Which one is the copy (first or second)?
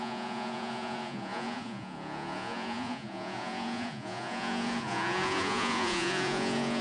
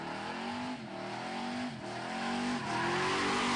first